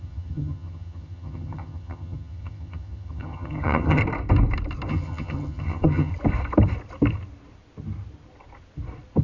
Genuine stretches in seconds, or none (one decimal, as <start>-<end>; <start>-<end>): 4.0-4.9; 6.1-9.2